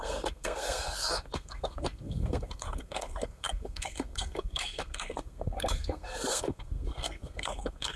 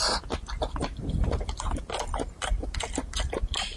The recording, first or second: second